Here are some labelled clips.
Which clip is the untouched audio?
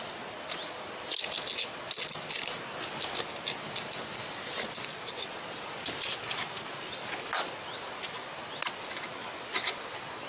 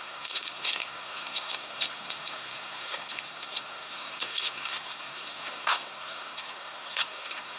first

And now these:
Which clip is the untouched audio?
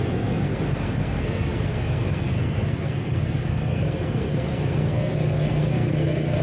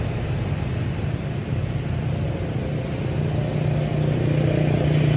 second